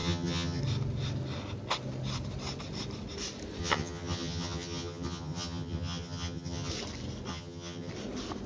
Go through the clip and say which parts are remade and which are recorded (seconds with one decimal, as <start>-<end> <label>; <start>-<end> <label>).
0.0-0.6 remade; 0.6-3.6 recorded; 3.6-6.7 remade; 6.7-7.3 recorded; 7.3-7.9 remade; 7.9-8.5 recorded